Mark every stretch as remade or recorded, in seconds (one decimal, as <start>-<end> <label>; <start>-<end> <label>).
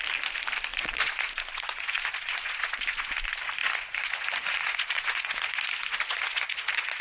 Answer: 0.0-0.7 recorded; 0.7-3.1 remade; 3.1-3.6 recorded; 3.6-7.0 remade